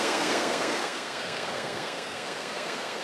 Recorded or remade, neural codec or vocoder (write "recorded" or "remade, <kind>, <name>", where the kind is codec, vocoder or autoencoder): remade, codec, SNAC